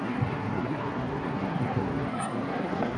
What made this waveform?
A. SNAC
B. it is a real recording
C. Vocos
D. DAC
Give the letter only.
A